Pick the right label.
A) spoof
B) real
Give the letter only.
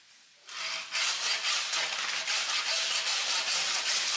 B